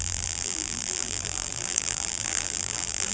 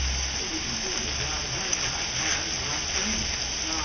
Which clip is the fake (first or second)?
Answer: first